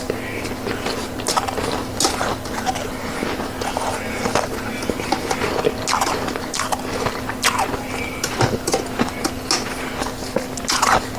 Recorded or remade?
recorded